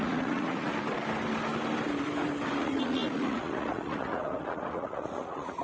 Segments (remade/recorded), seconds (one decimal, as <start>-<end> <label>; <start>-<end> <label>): 0.0-0.7 remade; 0.7-2.6 recorded; 2.6-5.6 remade